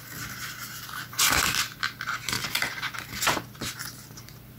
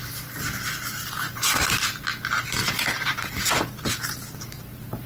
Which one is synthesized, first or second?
second